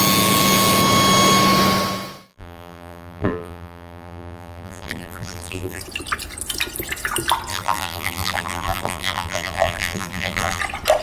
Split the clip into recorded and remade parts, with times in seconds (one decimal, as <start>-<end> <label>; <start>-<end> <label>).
0.0-2.3 recorded; 2.3-5.8 remade; 5.8-7.5 recorded; 7.5-10.6 remade; 10.6-11.0 recorded